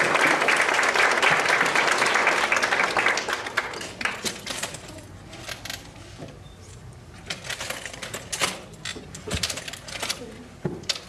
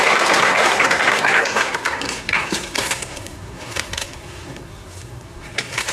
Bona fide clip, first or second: first